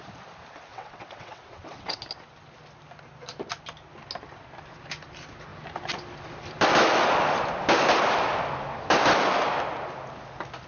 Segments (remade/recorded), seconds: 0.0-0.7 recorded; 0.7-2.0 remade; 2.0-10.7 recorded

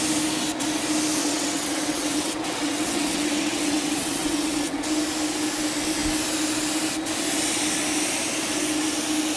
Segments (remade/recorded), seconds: 0.0-1.2 recorded; 1.2-4.8 remade; 4.8-9.4 recorded

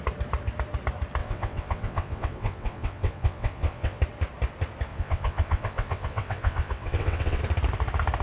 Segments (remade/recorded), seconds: 0.0-1.2 recorded; 1.2-4.0 remade; 4.0-4.9 recorded; 4.9-7.4 remade; 7.4-8.2 recorded

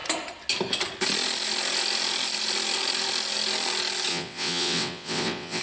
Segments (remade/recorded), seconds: 0.0-4.1 recorded; 4.1-5.6 remade